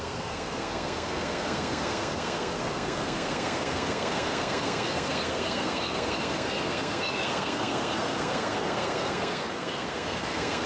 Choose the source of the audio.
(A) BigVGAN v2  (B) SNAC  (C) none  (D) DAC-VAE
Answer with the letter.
B